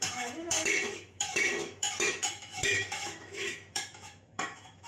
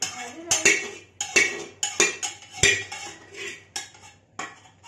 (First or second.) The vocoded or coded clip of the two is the first